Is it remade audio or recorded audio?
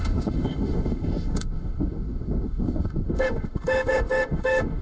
remade